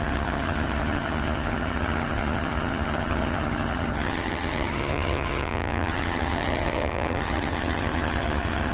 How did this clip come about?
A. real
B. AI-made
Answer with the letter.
B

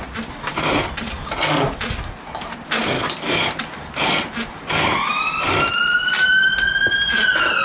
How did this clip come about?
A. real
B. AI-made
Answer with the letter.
A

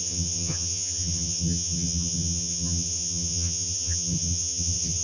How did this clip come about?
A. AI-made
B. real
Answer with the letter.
A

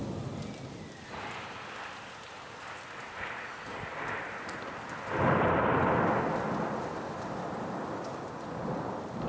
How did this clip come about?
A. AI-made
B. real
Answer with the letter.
B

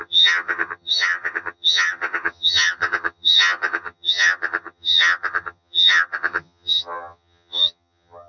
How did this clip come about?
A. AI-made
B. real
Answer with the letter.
A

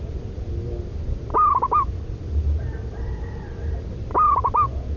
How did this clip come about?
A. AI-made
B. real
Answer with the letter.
B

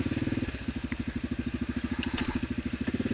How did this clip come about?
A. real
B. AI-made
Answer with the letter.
A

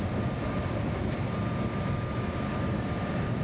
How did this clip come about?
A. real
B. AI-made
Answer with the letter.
A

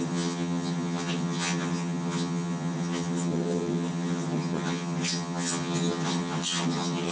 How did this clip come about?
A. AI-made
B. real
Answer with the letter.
A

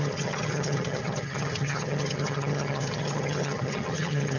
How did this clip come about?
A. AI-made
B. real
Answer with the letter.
A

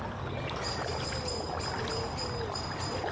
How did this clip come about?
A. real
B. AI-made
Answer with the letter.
A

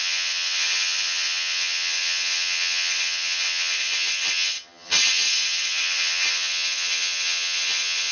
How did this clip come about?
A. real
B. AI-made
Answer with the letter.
B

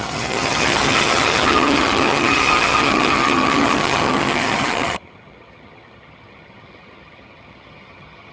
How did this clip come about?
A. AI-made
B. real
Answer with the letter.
A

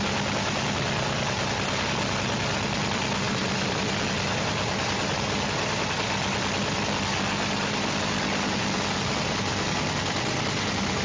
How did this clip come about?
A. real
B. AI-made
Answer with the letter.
A